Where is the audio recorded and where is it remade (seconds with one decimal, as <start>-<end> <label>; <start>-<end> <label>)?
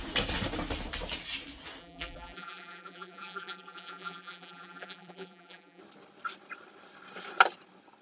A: 0.0-1.8 recorded; 1.8-5.8 remade; 5.8-8.0 recorded